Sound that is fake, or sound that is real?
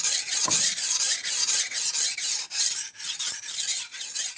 fake